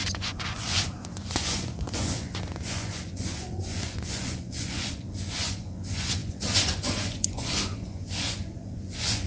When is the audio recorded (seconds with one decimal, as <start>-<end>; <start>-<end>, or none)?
none